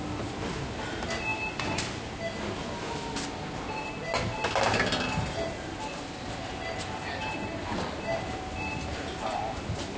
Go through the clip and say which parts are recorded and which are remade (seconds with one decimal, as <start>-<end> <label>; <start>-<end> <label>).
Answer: 0.0-10.0 recorded